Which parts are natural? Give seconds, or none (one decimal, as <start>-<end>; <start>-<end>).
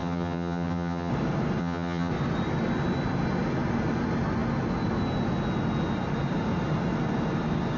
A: 1.1-1.6; 2.1-7.8